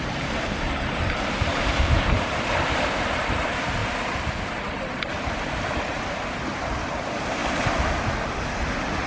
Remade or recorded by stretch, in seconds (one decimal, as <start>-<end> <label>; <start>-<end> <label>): 0.0-3.8 remade; 3.8-5.8 recorded; 5.8-7.4 remade; 7.4-9.1 recorded

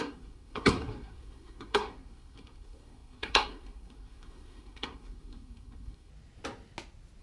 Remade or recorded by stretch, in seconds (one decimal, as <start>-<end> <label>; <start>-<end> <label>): 0.0-6.1 remade; 6.1-7.2 recorded

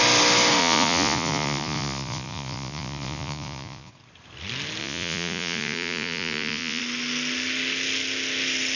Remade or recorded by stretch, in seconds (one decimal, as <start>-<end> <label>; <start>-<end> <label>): 0.0-0.6 recorded; 0.6-3.9 remade; 3.9-4.8 recorded; 4.8-6.8 remade; 6.8-8.8 recorded

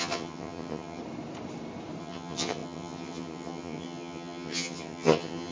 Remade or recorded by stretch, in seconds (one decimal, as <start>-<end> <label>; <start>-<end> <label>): 0.0-1.0 remade; 1.0-2.0 recorded; 2.0-5.5 remade

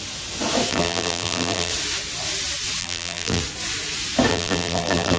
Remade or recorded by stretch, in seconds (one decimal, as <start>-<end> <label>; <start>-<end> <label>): 0.0-0.7 recorded; 0.7-1.7 remade; 1.7-2.8 recorded; 2.8-3.4 remade; 3.4-4.3 recorded; 4.3-5.2 remade

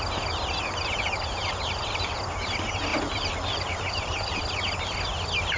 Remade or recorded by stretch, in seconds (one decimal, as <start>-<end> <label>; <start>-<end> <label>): 0.0-1.4 recorded; 1.4-2.2 remade; 2.2-2.9 recorded; 2.9-4.4 remade; 4.4-5.6 recorded

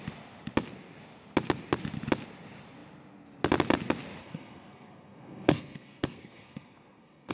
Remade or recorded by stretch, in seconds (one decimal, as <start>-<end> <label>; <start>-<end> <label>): 0.0-4.2 recorded; 4.2-7.3 remade

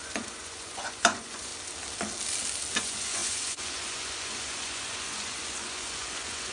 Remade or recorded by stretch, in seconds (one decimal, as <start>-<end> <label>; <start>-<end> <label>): 0.0-1.5 remade; 1.5-2.8 recorded; 2.8-6.5 remade